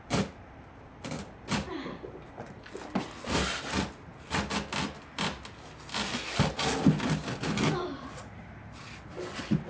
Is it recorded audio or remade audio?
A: recorded